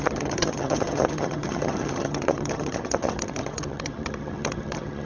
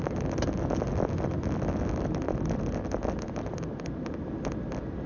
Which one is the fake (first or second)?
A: first